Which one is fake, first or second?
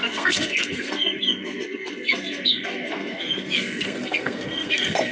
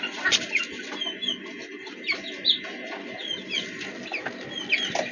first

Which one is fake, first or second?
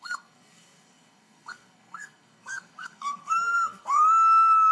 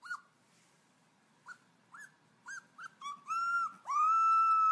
first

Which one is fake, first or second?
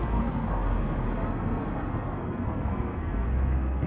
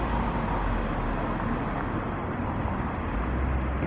first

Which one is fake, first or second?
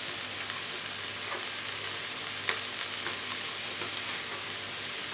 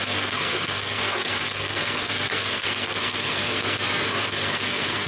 second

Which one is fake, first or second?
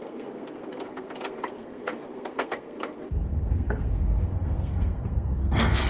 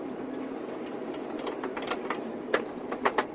first